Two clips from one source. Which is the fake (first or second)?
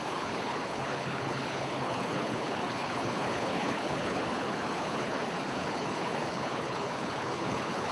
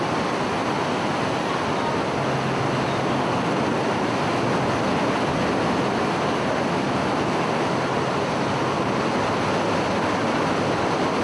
first